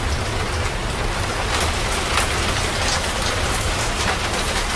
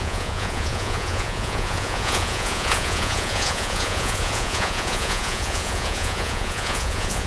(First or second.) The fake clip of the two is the second